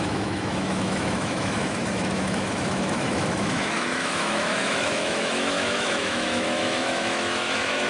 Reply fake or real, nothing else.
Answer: fake